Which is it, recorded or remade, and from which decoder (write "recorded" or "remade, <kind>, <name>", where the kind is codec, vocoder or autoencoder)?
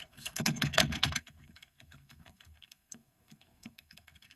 remade, codec, SNAC